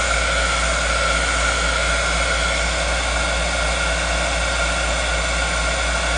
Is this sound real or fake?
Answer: real